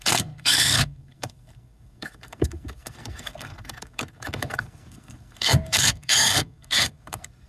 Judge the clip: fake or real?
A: fake